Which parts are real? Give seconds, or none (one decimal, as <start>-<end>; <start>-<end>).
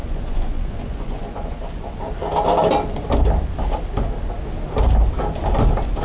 2.0-6.0